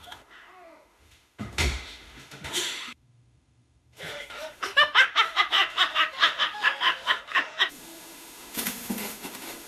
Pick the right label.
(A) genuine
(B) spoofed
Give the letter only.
B